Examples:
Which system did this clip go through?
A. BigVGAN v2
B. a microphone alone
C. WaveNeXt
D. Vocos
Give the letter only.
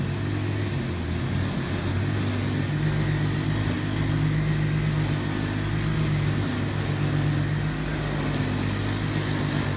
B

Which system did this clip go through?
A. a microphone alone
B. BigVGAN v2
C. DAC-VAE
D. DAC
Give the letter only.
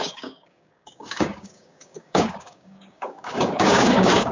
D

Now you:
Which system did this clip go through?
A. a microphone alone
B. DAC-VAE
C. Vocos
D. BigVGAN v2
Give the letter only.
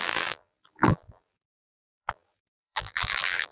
D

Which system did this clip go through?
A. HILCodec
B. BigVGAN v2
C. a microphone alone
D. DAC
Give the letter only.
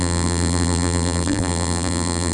B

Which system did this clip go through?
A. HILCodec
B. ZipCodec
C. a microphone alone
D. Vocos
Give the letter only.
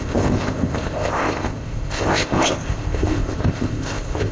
B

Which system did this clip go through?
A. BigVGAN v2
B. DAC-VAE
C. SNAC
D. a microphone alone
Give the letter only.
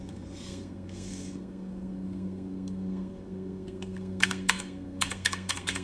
C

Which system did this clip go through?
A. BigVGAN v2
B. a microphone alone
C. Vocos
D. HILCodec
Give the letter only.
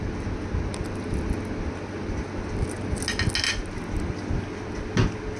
B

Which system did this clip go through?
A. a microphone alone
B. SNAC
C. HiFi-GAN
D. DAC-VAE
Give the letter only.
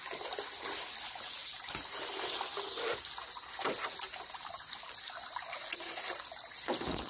A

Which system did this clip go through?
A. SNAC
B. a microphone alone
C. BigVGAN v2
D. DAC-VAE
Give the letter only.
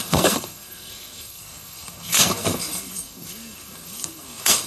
A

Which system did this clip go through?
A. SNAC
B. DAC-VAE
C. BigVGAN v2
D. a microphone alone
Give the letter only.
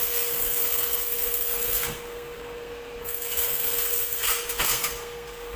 A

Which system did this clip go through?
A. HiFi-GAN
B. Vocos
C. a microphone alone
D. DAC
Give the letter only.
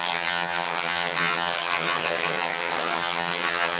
A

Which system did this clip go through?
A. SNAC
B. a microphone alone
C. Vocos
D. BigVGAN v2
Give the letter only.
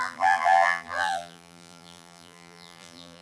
D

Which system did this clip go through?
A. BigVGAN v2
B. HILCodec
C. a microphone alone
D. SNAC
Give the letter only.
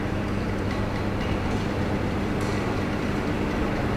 C